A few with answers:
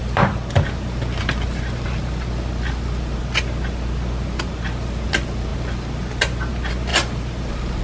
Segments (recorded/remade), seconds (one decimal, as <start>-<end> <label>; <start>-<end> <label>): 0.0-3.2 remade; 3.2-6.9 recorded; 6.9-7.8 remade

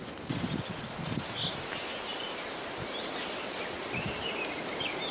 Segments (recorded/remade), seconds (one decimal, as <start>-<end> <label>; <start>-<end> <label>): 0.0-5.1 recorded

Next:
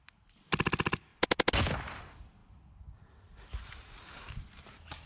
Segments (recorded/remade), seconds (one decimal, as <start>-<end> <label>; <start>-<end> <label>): 0.0-5.1 recorded